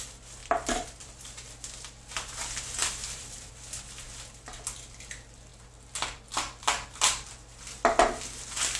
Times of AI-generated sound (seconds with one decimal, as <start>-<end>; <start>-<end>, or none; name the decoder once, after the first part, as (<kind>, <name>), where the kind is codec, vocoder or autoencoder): 0.4-1.4 (vocoder, BigVGAN v2); 2.8-3.5